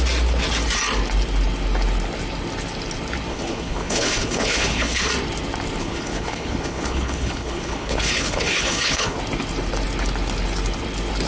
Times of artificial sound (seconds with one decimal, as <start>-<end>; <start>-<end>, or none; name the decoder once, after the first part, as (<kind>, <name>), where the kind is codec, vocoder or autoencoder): 3.3-5.1 (codec, HILCodec); 5.8-9.2